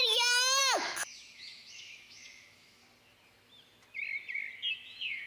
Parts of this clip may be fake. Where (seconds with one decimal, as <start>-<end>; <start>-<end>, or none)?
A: 0.0-2.8; 4.7-5.3